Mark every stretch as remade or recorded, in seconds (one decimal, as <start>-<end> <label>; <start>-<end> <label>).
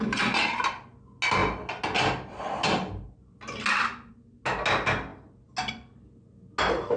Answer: 0.0-7.0 recorded